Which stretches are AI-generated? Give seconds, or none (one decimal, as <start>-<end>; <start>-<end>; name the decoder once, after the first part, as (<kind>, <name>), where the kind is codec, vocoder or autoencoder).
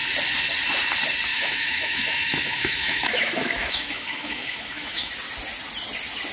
1.3-5.1 (autoencoder, DAC-VAE)